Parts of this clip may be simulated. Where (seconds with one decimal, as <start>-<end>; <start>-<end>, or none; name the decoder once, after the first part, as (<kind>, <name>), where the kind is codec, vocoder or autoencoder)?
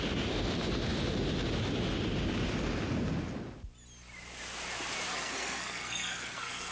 5.1-6.7 (codec, SNAC)